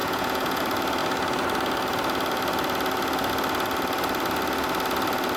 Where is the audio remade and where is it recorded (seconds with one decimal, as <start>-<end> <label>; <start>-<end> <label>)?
0.0-0.6 remade; 0.6-5.4 recorded